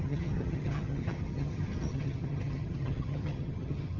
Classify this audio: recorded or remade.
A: remade